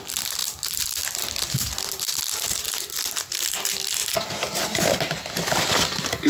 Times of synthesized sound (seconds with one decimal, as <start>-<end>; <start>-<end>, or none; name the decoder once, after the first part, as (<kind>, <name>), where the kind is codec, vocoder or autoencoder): none